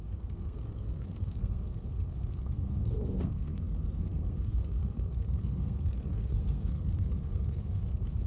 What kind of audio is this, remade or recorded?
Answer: remade